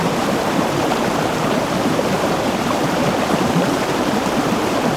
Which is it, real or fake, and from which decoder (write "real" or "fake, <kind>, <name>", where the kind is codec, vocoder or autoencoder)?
fake, vocoder, BigVGAN v2